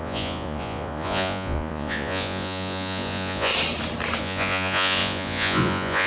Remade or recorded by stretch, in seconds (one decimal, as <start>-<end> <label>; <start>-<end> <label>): 0.0-3.5 remade; 3.5-4.2 recorded; 4.2-6.1 remade